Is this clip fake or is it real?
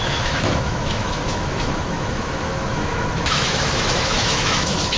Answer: fake